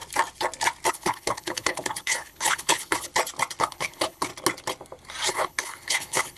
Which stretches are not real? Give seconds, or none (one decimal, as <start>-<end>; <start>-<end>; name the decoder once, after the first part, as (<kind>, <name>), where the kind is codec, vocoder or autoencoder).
0.9-3.1 (codec, HILCodec); 3.6-4.3; 5.3-6.4